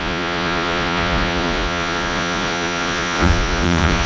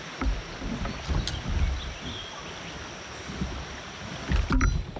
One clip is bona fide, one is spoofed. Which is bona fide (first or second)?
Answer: second